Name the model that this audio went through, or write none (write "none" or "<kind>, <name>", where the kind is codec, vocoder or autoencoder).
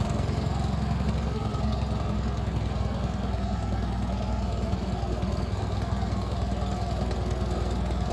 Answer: codec, SNAC